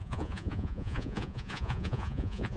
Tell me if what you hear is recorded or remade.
remade